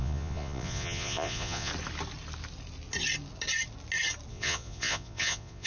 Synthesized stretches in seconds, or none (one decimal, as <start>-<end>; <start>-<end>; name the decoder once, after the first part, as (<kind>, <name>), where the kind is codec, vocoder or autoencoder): 0.0-1.7 (vocoder, Vocos); 4.3-5.7